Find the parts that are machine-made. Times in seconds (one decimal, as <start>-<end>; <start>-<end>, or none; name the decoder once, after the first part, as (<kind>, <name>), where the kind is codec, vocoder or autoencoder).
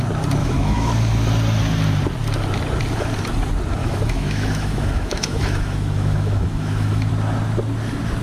0.4-0.9 (autoencoder, DAC-VAE); 3.8-7.1